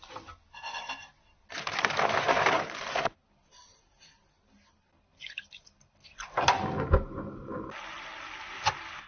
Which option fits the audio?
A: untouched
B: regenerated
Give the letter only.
A